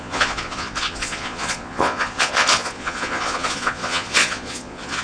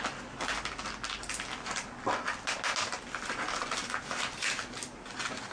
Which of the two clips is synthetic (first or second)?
first